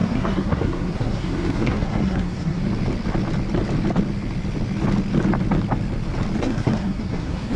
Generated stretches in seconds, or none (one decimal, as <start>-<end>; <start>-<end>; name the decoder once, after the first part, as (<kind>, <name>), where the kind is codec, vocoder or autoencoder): 0.0-2.6 (codec, SNAC); 6.4-7.6